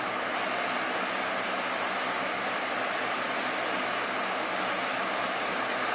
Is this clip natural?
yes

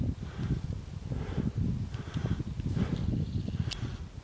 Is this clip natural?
yes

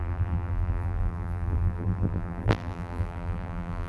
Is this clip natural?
no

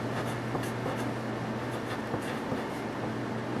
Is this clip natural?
yes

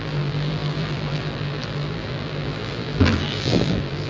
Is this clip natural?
no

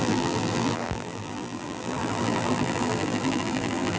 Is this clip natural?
no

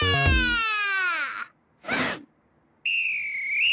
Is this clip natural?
yes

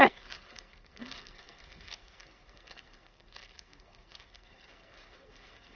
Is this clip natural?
no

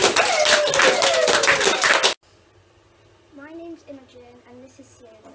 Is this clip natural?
yes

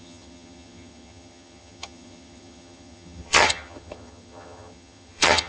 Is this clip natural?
no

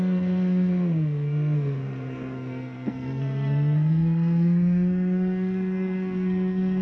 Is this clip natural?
no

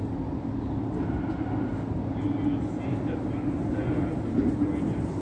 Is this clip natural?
yes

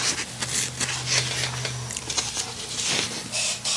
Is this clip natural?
yes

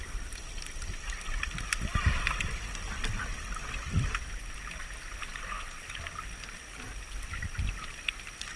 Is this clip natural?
yes